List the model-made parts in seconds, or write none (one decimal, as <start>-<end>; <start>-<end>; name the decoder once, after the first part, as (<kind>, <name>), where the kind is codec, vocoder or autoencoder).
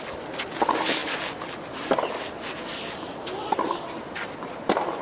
none